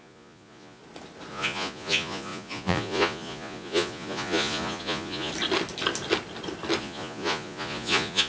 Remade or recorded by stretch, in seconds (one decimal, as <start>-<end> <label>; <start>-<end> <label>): 0.0-0.8 remade; 0.8-1.3 recorded; 1.3-5.3 remade; 5.3-6.8 recorded; 6.8-8.3 remade